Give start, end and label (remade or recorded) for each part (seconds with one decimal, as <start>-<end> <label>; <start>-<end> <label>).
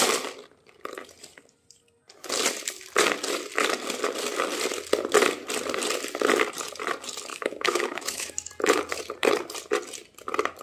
0.0-7.3 recorded; 7.3-8.5 remade; 8.5-10.6 recorded